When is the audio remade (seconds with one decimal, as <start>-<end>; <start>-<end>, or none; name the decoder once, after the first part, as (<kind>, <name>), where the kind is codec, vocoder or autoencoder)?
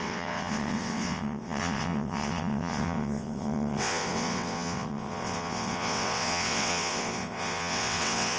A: 0.0-8.4 (vocoder, WaveNeXt)